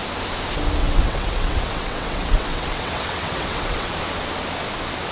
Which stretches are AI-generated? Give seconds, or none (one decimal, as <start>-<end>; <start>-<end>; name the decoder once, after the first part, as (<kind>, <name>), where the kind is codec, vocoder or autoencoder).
0.8-3.9 (vocoder, WaveNeXt)